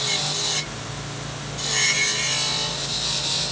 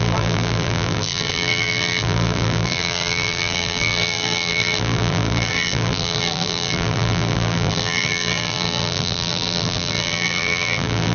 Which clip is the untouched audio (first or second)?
first